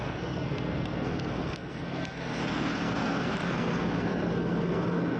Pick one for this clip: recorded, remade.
remade